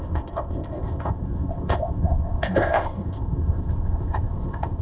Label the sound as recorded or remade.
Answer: remade